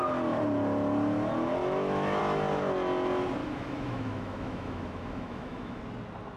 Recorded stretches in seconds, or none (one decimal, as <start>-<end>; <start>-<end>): 0.0-1.6; 2.2-3.4; 5.8-6.4